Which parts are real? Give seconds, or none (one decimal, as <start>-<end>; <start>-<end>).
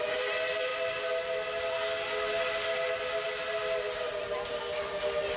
0.0-5.4